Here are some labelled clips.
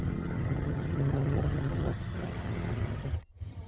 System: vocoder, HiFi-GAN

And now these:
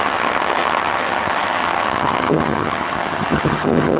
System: vocoder, HiFi-GAN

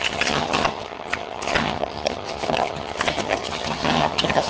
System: vocoder, HiFi-GAN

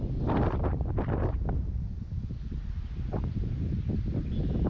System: none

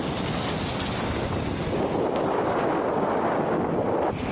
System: none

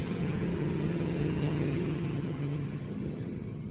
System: vocoder, HiFi-GAN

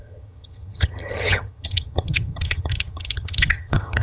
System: vocoder, HiFi-GAN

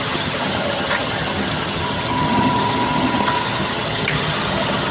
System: vocoder, HiFi-GAN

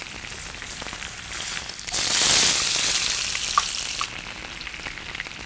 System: none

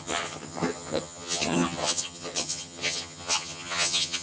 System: vocoder, HiFi-GAN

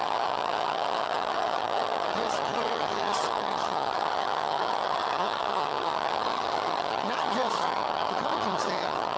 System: vocoder, HiFi-GAN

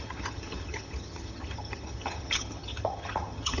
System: vocoder, HiFi-GAN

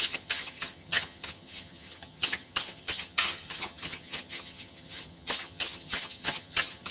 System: vocoder, HiFi-GAN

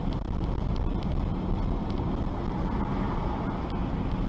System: none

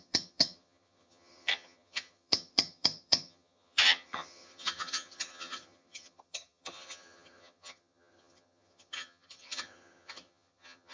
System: vocoder, HiFi-GAN